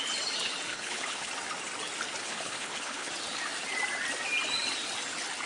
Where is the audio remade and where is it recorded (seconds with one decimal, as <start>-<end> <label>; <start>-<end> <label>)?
0.0-0.7 recorded; 0.7-1.3 remade; 1.3-2.2 recorded; 2.2-3.1 remade; 3.1-5.5 recorded

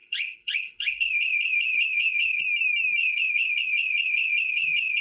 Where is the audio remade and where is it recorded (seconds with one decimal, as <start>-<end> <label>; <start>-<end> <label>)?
0.0-2.4 remade; 2.4-3.0 recorded; 3.0-5.0 remade

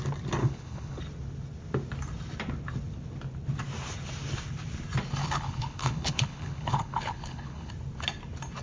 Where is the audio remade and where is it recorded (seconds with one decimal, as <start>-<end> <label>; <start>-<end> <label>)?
0.0-0.4 recorded; 0.4-1.0 remade; 1.0-5.2 recorded; 5.2-7.7 remade; 7.7-8.6 recorded

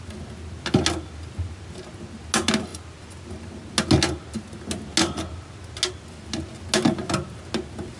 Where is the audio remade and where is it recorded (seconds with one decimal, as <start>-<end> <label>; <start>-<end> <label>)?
0.0-8.0 recorded

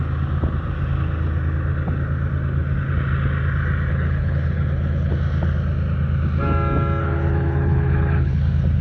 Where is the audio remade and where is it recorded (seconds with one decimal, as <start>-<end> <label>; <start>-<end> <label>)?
0.0-3.9 recorded; 3.9-5.1 remade; 5.1-7.0 recorded; 7.0-8.4 remade; 8.4-8.8 recorded

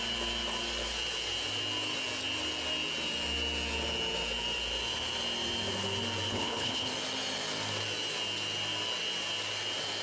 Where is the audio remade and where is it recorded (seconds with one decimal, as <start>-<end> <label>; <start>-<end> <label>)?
0.0-6.3 recorded; 6.3-6.9 remade; 6.9-10.0 recorded

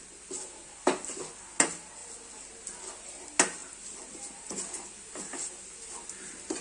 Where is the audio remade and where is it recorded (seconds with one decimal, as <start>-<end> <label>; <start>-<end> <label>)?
0.0-6.6 recorded